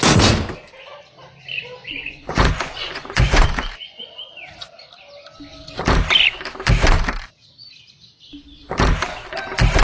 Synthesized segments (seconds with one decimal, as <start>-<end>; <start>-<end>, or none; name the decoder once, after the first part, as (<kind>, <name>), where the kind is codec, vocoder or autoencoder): 1.8-4.0 (vocoder, Vocos)